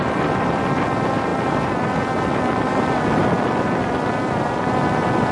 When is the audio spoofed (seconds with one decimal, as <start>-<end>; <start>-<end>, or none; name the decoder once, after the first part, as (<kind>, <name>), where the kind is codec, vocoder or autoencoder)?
none